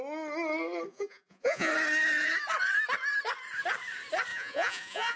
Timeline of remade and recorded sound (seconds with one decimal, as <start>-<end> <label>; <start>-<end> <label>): 0.0-0.9 recorded; 0.9-1.7 remade; 1.7-4.3 recorded; 4.3-5.2 remade